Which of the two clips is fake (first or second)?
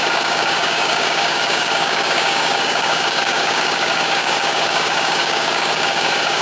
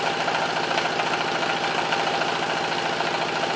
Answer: first